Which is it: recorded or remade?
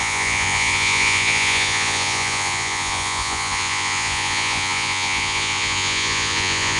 remade